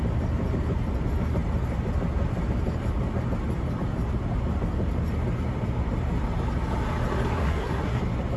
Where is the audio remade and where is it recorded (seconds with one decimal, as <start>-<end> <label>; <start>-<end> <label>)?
0.0-7.4 recorded; 7.4-8.0 remade; 8.0-8.4 recorded